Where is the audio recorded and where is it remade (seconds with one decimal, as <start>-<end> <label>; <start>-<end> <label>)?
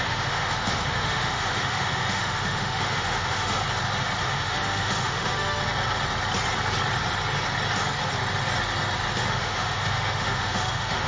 0.0-3.6 remade; 3.6-4.2 recorded; 4.2-5.6 remade; 5.6-9.2 recorded; 9.2-11.1 remade